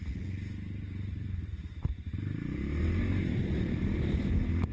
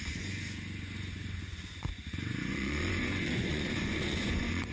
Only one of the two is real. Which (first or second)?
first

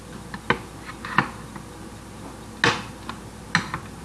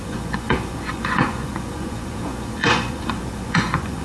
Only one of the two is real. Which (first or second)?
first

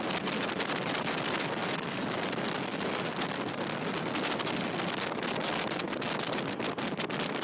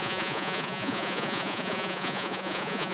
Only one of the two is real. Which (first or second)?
first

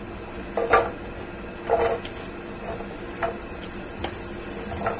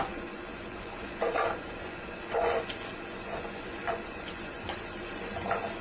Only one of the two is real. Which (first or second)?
first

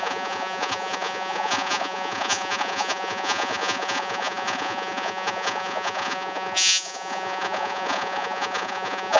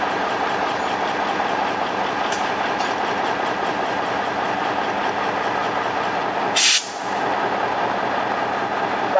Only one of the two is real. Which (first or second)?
second